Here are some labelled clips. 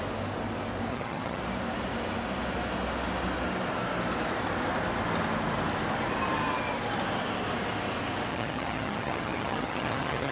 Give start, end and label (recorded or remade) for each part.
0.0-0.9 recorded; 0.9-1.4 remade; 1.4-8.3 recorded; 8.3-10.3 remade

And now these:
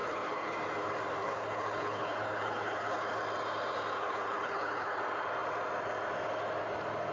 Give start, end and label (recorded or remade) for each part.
0.0-0.5 remade; 0.5-1.2 recorded; 1.2-3.2 remade; 3.2-4.0 recorded; 4.0-5.0 remade; 5.0-7.1 recorded

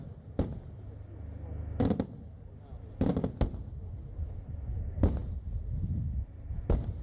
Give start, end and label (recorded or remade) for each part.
0.0-7.0 recorded

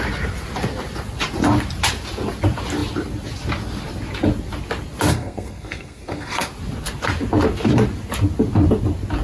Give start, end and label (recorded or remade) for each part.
0.0-5.1 recorded; 5.1-6.5 remade; 6.5-9.2 recorded